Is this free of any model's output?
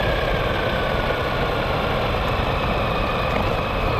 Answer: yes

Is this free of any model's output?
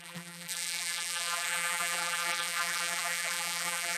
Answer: no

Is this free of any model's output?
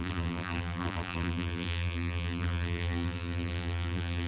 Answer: no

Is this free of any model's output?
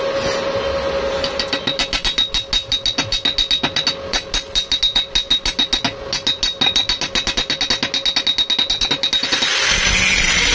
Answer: yes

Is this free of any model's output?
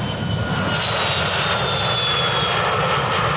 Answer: yes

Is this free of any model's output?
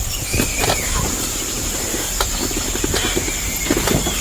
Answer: no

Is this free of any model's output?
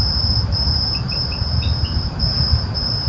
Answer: no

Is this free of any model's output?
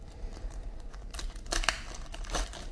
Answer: no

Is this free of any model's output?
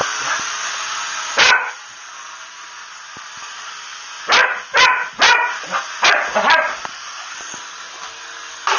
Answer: yes